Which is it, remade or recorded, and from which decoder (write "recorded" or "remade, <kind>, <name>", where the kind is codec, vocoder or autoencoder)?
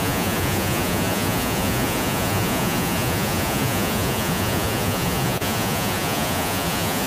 remade, vocoder, Vocos